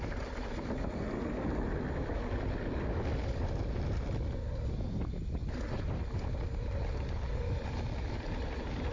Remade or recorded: recorded